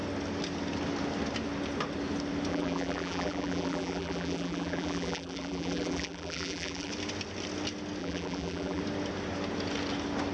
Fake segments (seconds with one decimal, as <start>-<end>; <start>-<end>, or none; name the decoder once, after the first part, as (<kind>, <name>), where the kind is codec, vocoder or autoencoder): 2.5-6.9 (vocoder, BigVGAN v2); 8.0-8.8